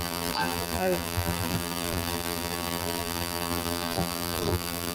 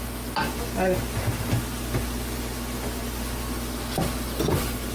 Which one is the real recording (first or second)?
second